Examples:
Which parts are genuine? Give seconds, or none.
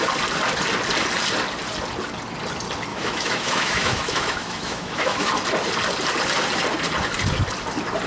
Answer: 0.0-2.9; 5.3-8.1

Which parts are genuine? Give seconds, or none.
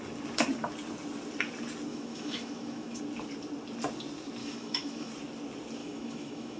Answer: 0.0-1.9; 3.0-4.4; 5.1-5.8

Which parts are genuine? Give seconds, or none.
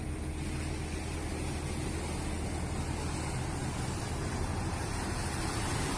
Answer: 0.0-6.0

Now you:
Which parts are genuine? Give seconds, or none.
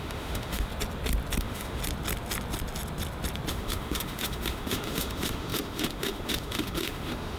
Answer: 0.7-1.4; 1.8-3.5